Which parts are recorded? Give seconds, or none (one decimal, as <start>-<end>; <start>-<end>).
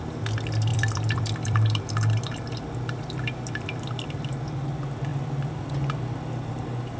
0.0-0.7; 4.4-7.0